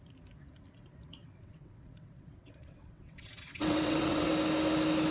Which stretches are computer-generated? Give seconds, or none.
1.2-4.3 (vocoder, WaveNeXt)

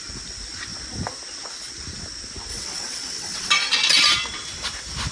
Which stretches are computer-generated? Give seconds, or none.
2.5-3.5 (vocoder, WaveNeXt)

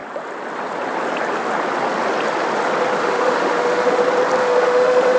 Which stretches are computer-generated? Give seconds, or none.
3.0-4.0 (autoencoder, DAC-VAE); 4.4-5.2

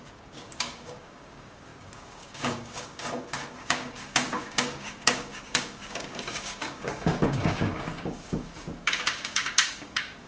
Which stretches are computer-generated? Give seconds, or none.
0.0-10.3 (codec, DAC)

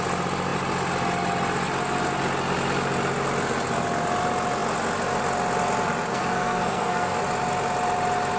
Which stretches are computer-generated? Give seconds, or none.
6.1-7.2 (codec, SNAC)

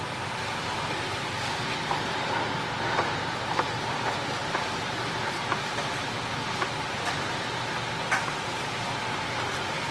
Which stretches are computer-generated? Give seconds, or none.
none